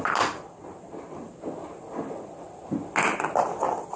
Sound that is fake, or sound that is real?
real